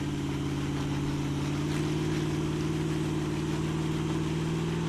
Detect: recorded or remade recorded